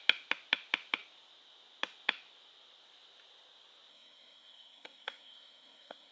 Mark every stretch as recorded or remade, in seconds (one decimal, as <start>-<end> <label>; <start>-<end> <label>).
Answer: 0.0-3.9 recorded; 3.9-6.1 remade